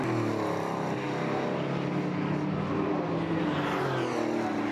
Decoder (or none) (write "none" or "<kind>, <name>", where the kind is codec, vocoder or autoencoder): none